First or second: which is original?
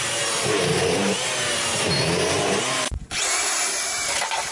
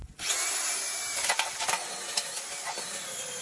second